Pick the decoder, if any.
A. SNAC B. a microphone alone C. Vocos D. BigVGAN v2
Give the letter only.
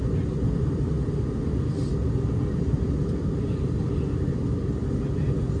B